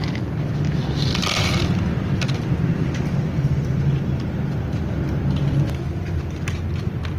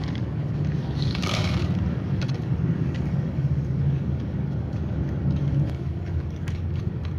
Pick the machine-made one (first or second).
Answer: second